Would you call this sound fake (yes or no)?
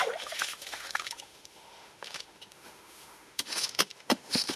yes